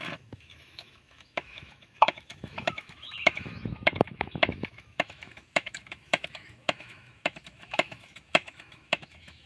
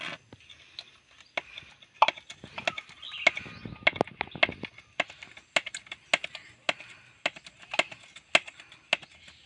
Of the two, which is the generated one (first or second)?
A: first